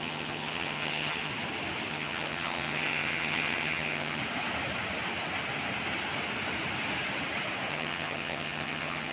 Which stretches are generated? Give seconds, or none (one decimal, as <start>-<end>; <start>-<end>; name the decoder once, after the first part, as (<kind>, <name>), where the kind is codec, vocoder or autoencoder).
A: 0.0-1.3 (vocoder, HiFi-GAN); 1.9-4.2; 7.7-9.1